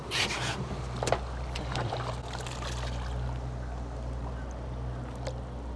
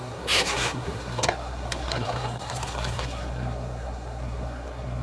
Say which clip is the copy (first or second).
second